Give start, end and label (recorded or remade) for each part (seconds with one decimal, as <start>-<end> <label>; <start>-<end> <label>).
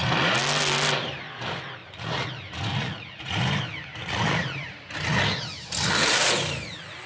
0.0-1.8 recorded; 1.8-2.3 remade; 2.3-2.7 recorded; 2.7-3.3 remade; 3.3-4.0 recorded; 4.0-4.7 remade; 4.7-7.1 recorded